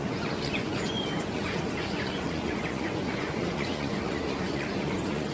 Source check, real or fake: fake